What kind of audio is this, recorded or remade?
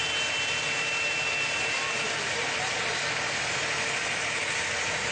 recorded